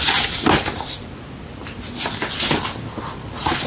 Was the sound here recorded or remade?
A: recorded